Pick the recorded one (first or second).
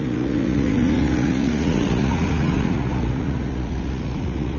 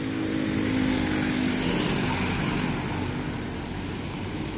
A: second